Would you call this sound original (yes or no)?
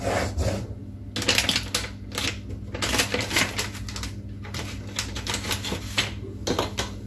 yes